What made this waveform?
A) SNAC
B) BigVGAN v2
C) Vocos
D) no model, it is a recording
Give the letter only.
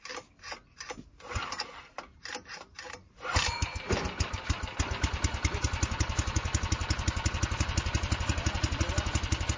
D